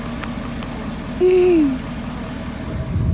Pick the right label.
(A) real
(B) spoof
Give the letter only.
A